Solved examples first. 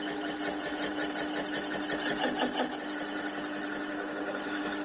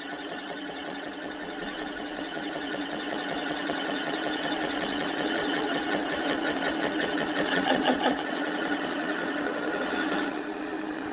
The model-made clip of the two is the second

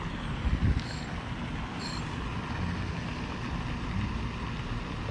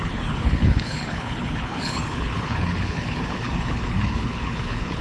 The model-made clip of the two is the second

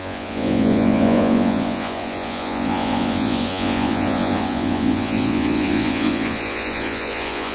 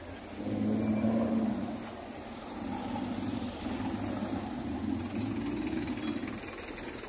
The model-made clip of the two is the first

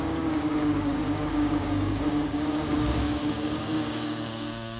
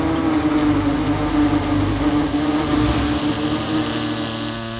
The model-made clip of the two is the first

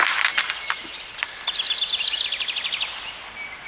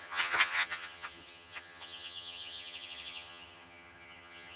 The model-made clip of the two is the second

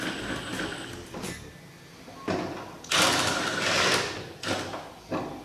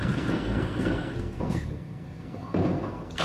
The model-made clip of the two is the second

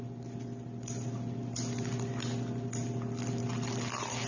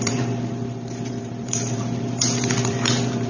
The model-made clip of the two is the second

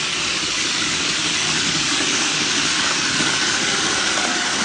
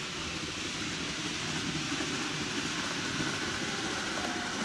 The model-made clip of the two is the first